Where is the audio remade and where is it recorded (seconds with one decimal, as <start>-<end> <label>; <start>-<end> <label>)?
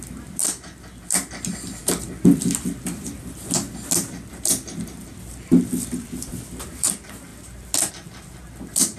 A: 0.0-9.0 recorded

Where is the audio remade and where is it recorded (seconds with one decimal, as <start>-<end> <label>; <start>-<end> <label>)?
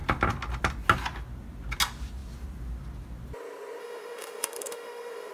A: 0.0-3.8 recorded; 3.8-5.3 remade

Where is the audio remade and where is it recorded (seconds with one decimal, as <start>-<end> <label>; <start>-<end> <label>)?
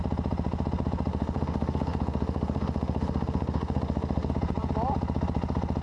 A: 0.0-1.1 recorded; 1.1-4.3 remade; 4.3-5.8 recorded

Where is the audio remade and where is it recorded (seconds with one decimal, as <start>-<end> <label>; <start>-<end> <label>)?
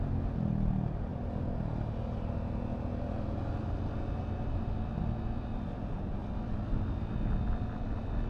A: 0.0-8.3 recorded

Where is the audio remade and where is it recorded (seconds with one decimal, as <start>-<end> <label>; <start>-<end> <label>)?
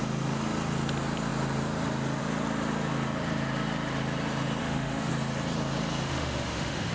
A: 0.0-4.6 recorded; 4.6-5.1 remade; 5.1-6.0 recorded; 6.0-6.9 remade